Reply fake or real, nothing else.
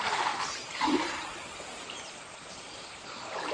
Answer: real